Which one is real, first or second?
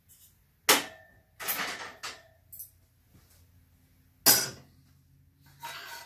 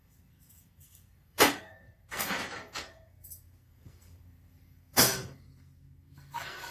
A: first